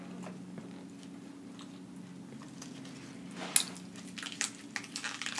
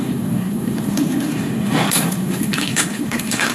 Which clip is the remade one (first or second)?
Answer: second